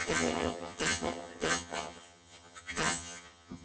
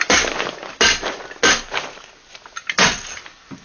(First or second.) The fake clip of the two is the first